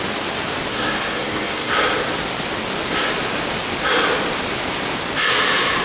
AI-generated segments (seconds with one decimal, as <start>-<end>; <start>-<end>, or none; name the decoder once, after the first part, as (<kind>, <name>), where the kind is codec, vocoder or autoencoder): 0.7-1.7 (codec, SNAC)